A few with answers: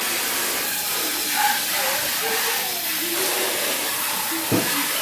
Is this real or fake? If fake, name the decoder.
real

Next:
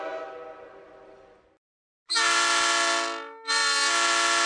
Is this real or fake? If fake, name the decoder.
real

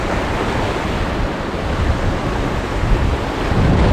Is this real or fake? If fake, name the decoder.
real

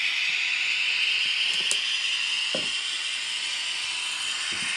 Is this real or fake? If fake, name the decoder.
real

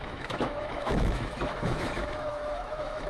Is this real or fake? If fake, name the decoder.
fake, autoencoder, DAC-VAE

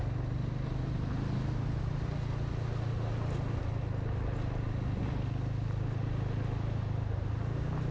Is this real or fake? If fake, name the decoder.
real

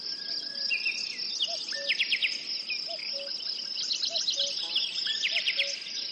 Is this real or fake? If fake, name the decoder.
real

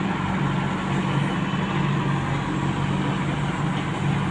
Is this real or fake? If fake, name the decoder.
real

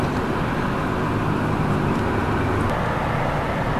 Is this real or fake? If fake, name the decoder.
real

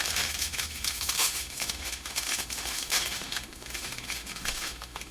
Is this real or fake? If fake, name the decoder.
fake, autoencoder, DAC-VAE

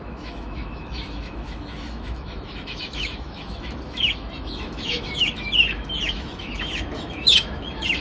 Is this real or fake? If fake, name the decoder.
fake, autoencoder, DAC-VAE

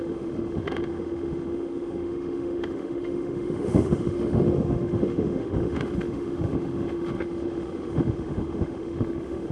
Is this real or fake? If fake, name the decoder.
fake, autoencoder, DAC-VAE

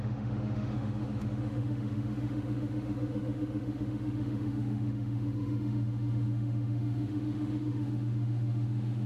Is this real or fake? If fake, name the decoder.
fake, autoencoder, DAC-VAE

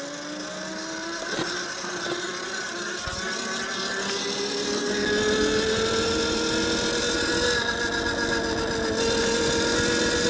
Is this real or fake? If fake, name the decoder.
real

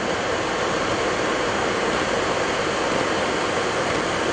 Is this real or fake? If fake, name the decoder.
real